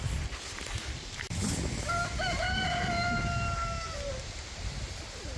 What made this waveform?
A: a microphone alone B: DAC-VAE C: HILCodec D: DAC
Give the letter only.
A